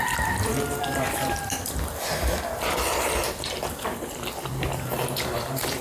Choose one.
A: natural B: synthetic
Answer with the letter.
B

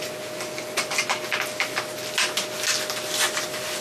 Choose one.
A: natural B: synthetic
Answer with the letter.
A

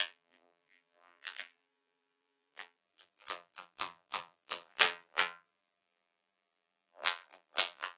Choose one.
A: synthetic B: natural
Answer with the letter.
A